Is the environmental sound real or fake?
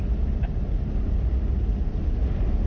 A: real